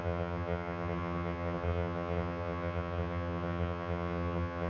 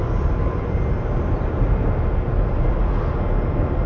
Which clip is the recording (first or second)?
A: second